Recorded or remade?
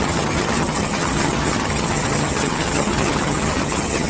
remade